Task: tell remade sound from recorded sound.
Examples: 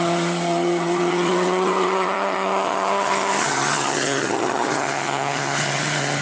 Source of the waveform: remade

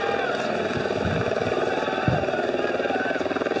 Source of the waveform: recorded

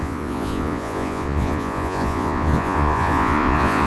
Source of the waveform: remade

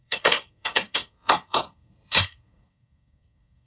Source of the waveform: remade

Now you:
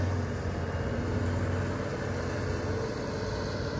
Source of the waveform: recorded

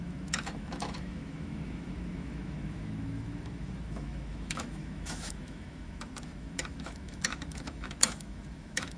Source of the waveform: remade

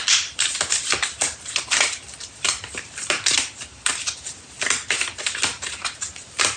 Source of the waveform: remade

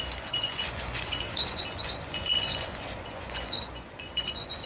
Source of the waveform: remade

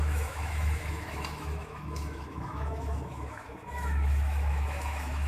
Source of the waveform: remade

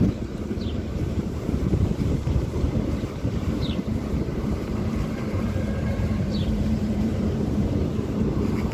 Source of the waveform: remade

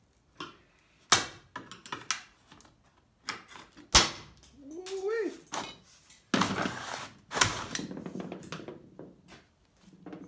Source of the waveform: recorded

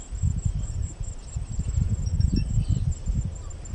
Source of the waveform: recorded